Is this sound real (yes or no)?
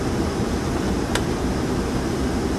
yes